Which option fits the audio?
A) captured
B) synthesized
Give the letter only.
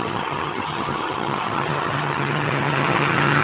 B